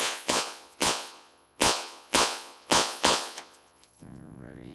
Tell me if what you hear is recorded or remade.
remade